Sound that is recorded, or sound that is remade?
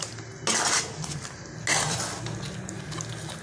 recorded